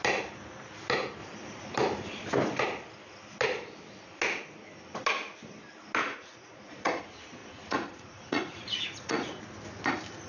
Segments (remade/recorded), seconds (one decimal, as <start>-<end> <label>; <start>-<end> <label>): 0.0-6.0 recorded; 6.0-7.0 remade; 7.0-7.4 recorded; 7.4-9.4 remade; 9.4-10.3 recorded